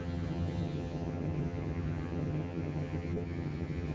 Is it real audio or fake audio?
fake